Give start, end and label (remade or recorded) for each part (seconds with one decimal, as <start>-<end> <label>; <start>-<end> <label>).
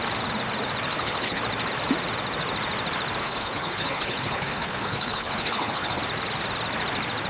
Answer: 0.0-0.9 recorded; 0.9-1.4 remade; 1.4-3.2 recorded; 3.2-6.0 remade; 6.0-7.3 recorded